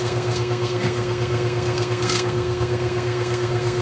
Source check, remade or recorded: remade